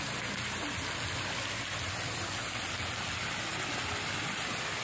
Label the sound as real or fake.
real